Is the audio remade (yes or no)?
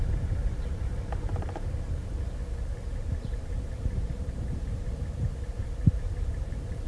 yes